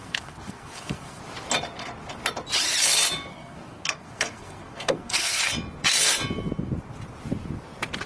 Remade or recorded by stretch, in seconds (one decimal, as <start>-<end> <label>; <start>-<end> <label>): 0.0-1.2 remade; 1.2-3.3 recorded; 3.3-5.4 remade; 5.4-8.1 recorded